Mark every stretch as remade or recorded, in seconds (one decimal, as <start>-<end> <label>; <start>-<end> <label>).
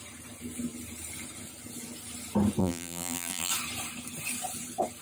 0.0-2.6 recorded; 2.6-3.5 remade; 3.5-5.0 recorded